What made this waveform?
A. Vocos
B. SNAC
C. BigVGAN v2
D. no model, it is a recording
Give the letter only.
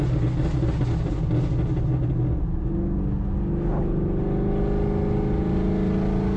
D